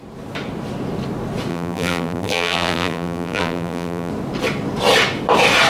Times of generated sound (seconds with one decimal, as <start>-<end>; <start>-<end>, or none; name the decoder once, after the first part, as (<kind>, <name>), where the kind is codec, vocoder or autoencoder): 1.5-4.1 (vocoder, BigVGAN v2)